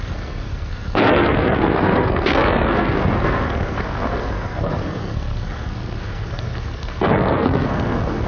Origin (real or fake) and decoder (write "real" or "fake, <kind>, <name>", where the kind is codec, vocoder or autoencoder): fake, codec, SNAC